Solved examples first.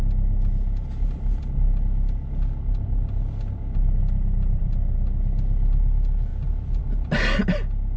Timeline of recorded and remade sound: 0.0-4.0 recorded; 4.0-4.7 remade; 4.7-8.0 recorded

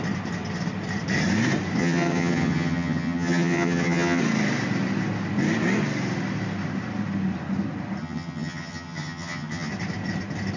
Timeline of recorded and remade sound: 0.0-1.8 recorded; 1.8-4.2 remade; 4.2-8.0 recorded; 8.0-9.7 remade; 9.7-10.6 recorded

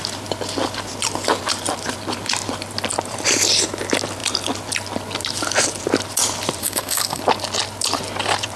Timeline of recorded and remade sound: 0.0-6.6 recorded; 6.6-7.2 remade; 7.2-8.6 recorded

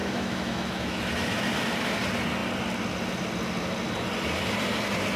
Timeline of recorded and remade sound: 0.0-1.0 remade; 1.0-5.2 recorded